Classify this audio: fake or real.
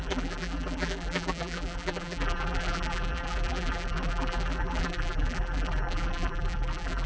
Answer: fake